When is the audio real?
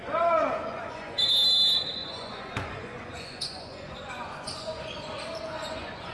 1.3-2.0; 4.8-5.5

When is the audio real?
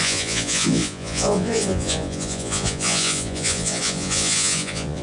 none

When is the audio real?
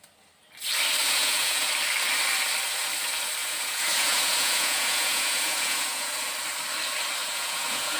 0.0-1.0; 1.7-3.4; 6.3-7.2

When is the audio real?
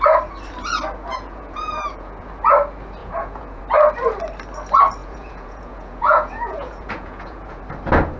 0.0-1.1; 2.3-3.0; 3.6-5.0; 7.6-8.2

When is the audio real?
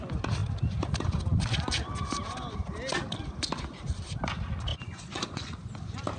0.0-4.7; 5.6-6.2